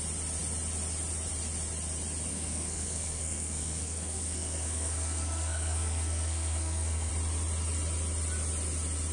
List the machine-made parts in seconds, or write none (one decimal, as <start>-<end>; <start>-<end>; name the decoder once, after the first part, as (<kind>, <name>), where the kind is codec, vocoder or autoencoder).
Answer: 2.3-7.1 (codec, SNAC)